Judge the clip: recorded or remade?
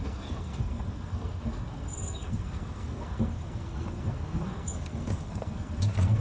remade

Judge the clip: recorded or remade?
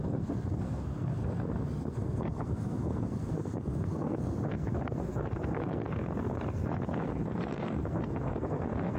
remade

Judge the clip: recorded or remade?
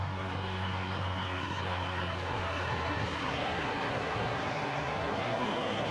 remade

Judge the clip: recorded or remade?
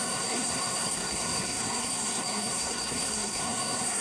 remade